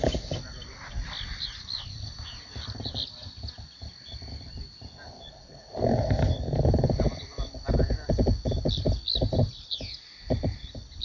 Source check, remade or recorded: recorded